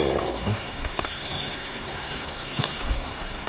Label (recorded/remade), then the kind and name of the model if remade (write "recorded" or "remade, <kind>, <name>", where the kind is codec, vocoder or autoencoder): remade, codec, SNAC